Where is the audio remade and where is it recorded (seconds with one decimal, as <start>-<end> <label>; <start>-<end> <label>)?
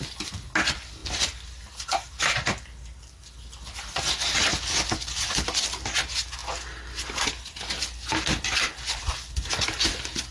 0.0-10.3 recorded